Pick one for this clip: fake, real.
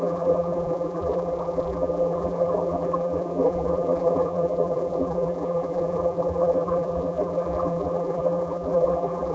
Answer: fake